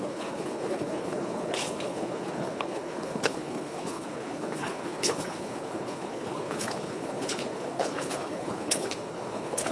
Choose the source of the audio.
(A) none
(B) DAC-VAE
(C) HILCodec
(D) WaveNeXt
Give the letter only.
C